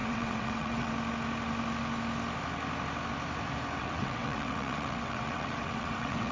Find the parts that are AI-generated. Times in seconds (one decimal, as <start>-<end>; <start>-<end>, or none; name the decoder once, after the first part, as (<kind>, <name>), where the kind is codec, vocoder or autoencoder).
0.0-0.9 (vocoder, WaveNeXt); 3.8-6.3